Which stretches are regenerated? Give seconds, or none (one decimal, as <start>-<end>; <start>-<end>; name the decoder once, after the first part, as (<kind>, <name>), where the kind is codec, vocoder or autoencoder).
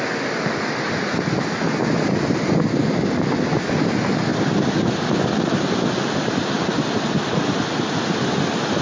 none